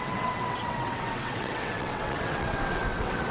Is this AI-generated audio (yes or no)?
yes